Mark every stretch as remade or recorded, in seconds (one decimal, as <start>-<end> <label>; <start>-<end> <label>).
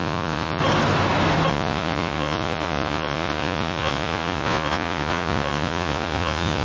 0.0-0.6 remade; 0.6-1.5 recorded; 1.5-6.6 remade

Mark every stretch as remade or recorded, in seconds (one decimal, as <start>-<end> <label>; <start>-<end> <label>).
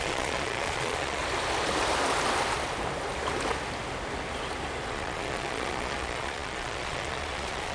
0.0-1.2 remade; 1.2-4.9 recorded; 4.9-7.7 remade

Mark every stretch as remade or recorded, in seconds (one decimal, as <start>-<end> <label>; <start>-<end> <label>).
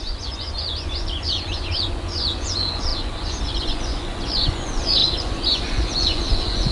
0.0-6.7 remade